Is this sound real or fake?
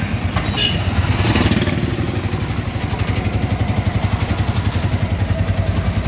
real